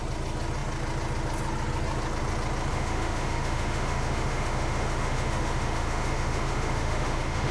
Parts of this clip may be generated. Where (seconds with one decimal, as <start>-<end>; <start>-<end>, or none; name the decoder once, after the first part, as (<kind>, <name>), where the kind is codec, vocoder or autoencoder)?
2.7-7.5 (autoencoder, DAC-VAE)